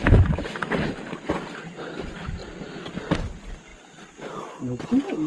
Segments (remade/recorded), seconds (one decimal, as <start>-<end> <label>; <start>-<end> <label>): 0.0-2.4 recorded; 2.4-3.1 remade; 3.1-5.3 recorded